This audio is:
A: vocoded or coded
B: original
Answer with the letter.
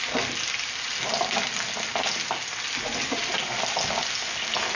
B